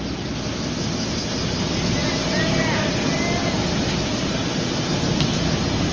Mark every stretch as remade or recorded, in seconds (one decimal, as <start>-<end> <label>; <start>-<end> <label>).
0.0-5.9 recorded